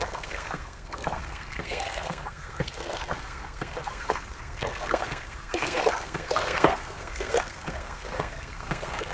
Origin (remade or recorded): remade